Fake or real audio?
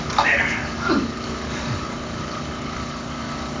fake